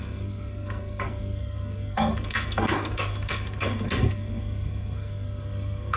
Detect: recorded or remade remade